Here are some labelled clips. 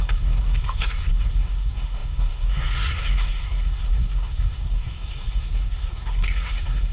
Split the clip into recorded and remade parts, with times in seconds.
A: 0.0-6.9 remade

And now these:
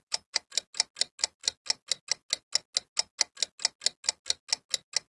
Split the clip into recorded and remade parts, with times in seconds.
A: 0.0-5.1 recorded

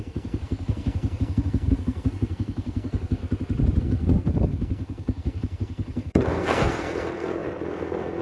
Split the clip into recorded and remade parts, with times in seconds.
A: 0.0-3.2 remade; 3.2-3.8 recorded; 3.8-8.2 remade